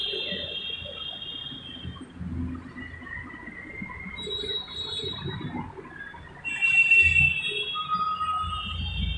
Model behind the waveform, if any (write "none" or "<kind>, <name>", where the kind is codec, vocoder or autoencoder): none